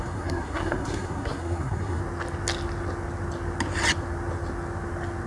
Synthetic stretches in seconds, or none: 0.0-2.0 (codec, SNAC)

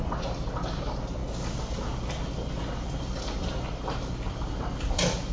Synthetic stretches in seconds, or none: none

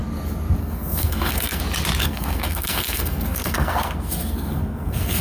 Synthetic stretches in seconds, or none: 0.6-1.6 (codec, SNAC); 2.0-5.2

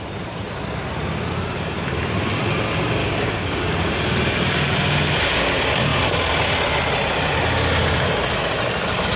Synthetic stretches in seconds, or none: 3.0-3.9 (codec, DAC)

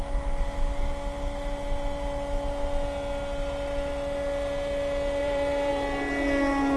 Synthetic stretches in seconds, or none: 5.2-5.7 (vocoder, BigVGAN v2)

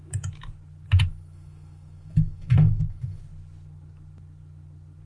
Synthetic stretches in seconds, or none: 1.1-3.2 (autoencoder, DAC-VAE)